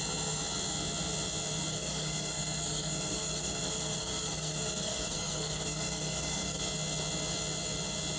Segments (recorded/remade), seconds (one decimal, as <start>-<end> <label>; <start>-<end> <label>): 0.0-1.7 recorded; 1.7-6.6 remade; 6.6-8.2 recorded